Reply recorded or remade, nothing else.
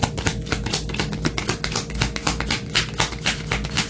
recorded